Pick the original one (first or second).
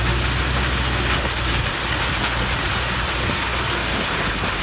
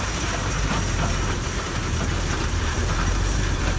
first